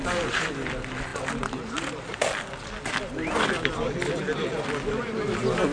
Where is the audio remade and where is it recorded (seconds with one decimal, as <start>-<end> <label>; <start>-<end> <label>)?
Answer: 0.0-5.7 recorded